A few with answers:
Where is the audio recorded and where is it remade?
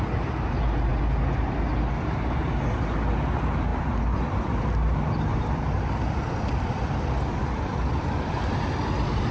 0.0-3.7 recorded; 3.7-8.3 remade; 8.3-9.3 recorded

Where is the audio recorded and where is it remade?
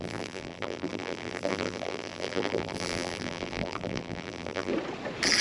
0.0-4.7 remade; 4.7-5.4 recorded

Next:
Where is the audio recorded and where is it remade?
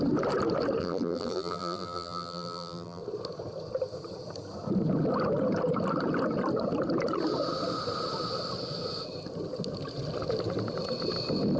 0.0-0.8 recorded; 0.8-3.0 remade; 3.0-11.6 recorded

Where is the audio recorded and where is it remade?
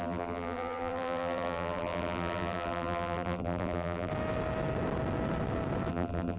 0.0-4.1 remade; 4.1-5.9 recorded; 5.9-6.4 remade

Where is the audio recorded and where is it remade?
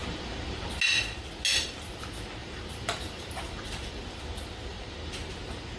0.0-0.8 remade; 0.8-2.4 recorded; 2.4-4.2 remade; 4.2-4.7 recorded; 4.7-5.3 remade; 5.3-5.8 recorded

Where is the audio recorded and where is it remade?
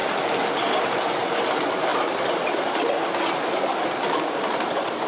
0.0-1.0 recorded; 1.0-1.9 remade; 1.9-3.2 recorded; 3.2-5.1 remade